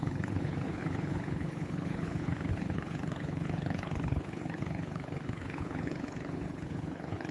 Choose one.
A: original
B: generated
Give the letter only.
B